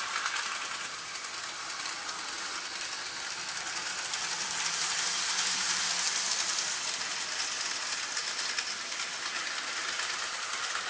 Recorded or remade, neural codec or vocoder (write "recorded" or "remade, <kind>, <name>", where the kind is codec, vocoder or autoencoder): recorded